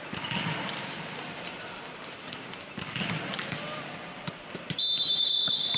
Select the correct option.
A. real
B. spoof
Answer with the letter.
A